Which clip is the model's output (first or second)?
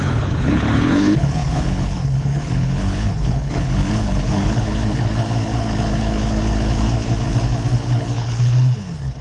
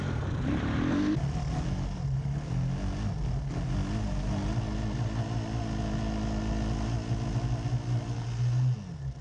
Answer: first